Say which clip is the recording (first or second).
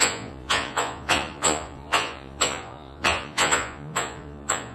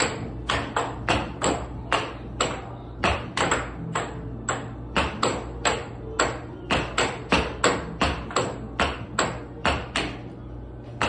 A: second